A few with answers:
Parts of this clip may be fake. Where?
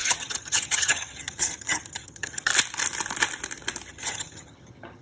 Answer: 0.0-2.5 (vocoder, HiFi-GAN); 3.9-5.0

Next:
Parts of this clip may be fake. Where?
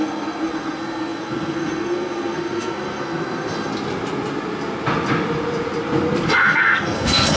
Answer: 0.0-3.7 (codec, SNAC); 6.3-7.4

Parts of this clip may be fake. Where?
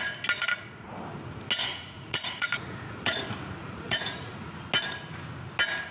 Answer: 0.4-0.9 (vocoder, Vocos); 1.7-3.2; 3.6-4.5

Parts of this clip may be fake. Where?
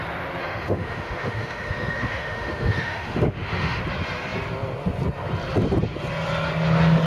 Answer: 0.4-3.8 (autoencoder, DAC-VAE)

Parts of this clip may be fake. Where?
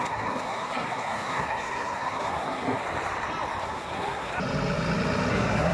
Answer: 0.0-2.8 (codec, SNAC); 3.6-4.3; 5.3-5.7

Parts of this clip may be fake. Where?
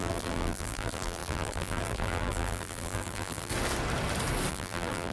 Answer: 0.0-3.5 (vocoder, BigVGAN v2); 4.5-5.1